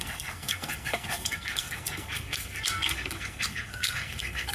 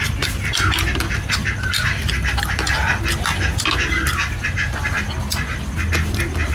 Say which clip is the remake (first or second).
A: first